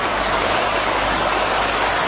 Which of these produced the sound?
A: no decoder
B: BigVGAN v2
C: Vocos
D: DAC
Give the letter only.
D